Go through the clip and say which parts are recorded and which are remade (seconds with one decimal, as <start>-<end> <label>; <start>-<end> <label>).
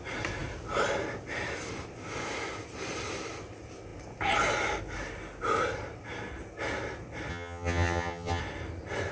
0.0-7.3 recorded; 7.3-8.4 remade; 8.4-9.1 recorded